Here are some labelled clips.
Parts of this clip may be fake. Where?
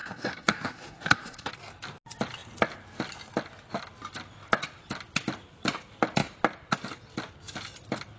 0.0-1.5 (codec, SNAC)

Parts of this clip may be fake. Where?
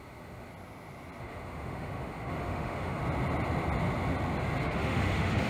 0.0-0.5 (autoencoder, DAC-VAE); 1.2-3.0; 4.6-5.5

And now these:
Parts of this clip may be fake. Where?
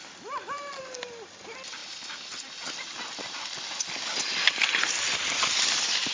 0.0-6.1 (vocoder, BigVGAN v2)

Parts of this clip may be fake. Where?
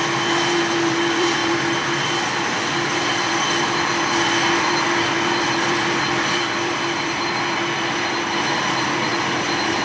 0.0-9.8 (vocoder, BigVGAN v2)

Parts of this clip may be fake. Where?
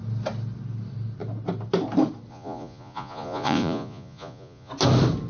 2.3-4.7 (vocoder, Vocos)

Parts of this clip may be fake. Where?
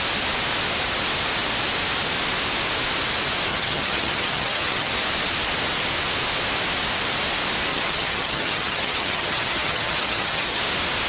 3.5-4.9 (vocoder, HiFi-GAN); 7.7-10.6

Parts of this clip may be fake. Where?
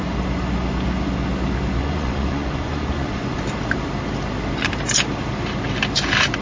1.8-3.4 (vocoder, Vocos)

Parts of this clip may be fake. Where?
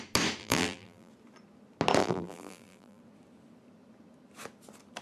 0.4-1.1 (vocoder, BigVGAN v2); 2.0-3.0